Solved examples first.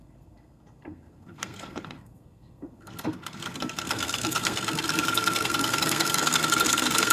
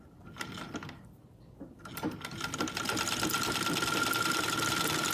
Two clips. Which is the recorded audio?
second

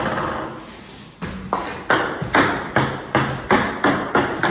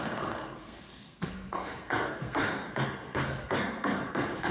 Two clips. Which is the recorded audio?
first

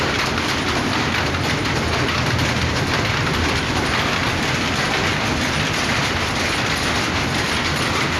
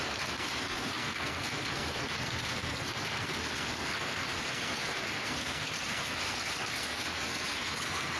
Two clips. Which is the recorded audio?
first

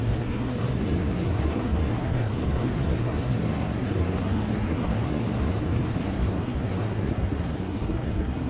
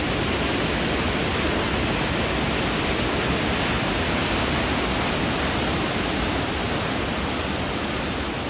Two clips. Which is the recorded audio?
second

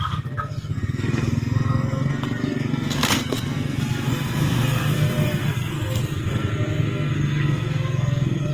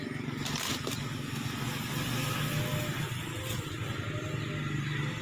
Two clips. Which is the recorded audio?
second